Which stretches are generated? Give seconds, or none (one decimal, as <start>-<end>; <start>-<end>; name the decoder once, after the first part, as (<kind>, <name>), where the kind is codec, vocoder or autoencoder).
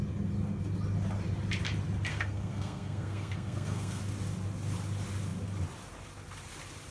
2.1-4.0 (codec, SNAC)